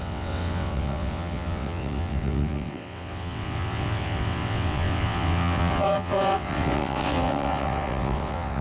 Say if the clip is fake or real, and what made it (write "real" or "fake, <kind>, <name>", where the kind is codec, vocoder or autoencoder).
fake, vocoder, WaveNeXt